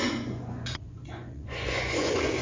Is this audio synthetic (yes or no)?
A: yes